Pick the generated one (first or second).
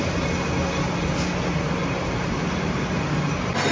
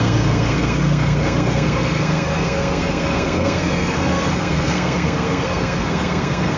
second